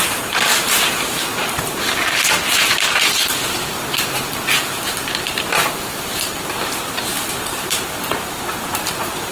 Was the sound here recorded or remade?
remade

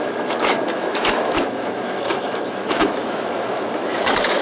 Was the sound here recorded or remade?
remade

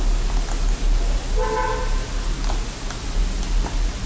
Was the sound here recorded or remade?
recorded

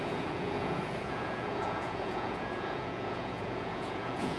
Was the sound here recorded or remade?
remade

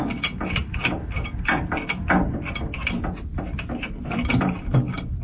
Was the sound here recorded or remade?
recorded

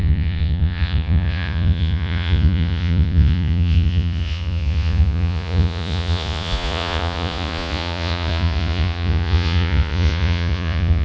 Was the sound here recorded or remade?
remade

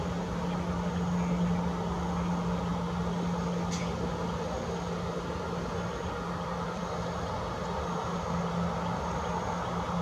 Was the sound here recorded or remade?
recorded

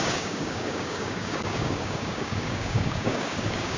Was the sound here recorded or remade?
remade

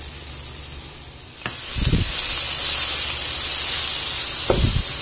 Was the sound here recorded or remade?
recorded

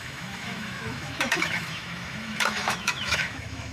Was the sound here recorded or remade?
remade